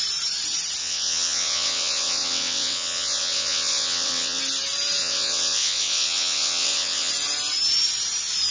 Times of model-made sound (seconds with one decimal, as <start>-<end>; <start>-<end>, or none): 0.8-4.4; 5.0-7.1